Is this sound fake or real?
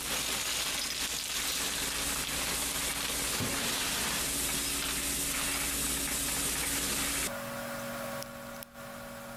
real